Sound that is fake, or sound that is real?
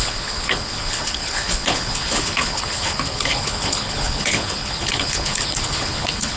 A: fake